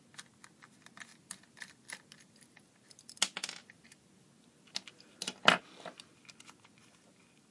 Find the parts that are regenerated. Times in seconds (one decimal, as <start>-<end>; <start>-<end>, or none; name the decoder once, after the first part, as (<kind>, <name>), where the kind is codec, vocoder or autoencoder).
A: none